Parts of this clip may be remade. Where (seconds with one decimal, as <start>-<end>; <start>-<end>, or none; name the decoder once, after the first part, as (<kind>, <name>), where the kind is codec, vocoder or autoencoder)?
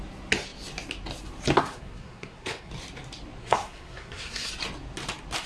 1.6-2.7 (codec, SNAC); 3.4-4.5